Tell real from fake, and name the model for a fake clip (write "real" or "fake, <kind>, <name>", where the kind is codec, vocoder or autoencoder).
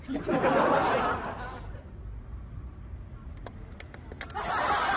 real